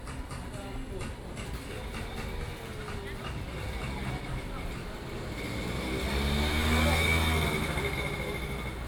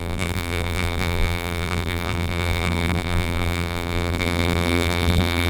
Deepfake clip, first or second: second